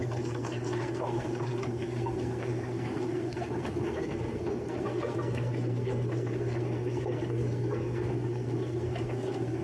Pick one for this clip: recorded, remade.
remade